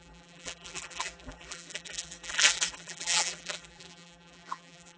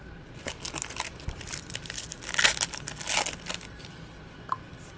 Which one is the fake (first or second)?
first